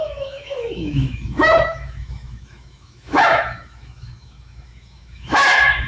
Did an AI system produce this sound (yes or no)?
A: yes